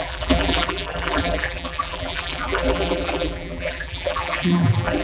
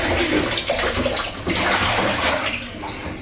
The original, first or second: second